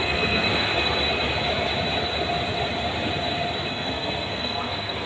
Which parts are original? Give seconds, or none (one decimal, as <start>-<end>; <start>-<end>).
0.7-3.7